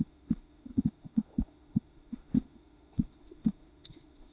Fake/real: fake